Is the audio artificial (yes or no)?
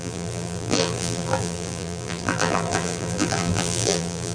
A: yes